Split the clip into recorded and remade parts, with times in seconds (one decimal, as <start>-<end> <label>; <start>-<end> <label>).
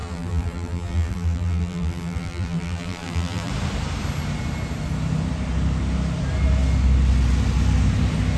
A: 0.0-3.5 remade; 3.5-8.4 recorded